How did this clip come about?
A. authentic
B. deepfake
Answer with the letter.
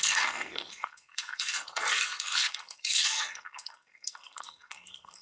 B